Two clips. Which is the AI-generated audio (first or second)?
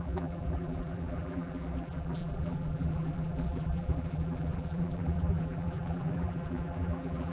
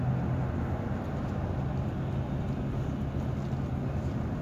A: first